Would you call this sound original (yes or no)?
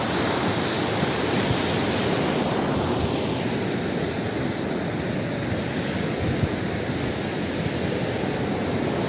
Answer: yes